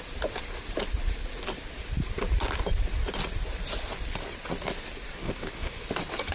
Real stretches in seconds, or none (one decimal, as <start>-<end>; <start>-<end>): 0.0-5.2; 5.8-6.3